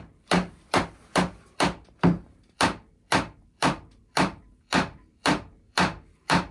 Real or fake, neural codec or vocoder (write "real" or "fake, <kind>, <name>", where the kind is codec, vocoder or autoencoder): fake, vocoder, BigVGAN v2